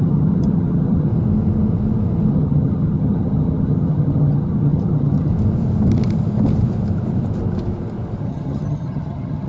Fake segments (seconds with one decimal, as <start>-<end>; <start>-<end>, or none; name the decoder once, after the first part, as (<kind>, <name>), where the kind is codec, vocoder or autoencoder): 0.0-1.1 (vocoder, HiFi-GAN); 2.3-5.3; 8.2-9.5